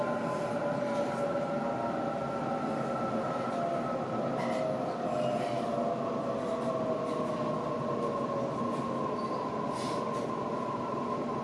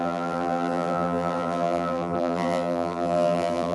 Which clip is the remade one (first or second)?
second